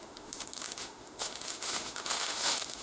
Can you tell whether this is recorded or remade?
remade